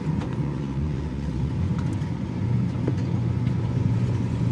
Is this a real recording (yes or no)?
no